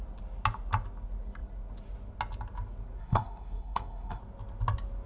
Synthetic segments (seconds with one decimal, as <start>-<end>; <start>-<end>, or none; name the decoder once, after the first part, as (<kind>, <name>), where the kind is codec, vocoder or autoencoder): 3.0-4.2 (codec, SNAC)